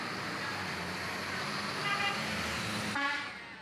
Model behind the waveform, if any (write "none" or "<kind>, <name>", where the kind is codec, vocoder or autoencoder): none